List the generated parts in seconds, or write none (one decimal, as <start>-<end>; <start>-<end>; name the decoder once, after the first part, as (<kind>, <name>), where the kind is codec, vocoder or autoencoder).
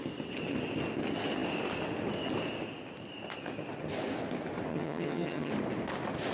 4.7-5.5 (vocoder, HiFi-GAN)